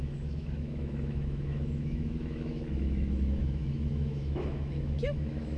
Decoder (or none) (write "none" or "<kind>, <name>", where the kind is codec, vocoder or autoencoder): autoencoder, DAC-VAE